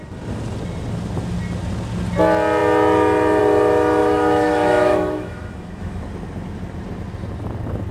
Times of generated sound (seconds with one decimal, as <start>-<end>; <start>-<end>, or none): 4.0-6.0